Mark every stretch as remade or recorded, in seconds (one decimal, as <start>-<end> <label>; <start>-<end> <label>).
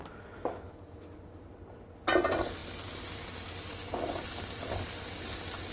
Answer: 0.0-5.7 recorded